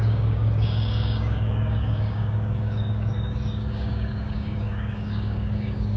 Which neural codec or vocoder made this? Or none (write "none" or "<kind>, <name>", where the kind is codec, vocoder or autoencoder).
codec, DAC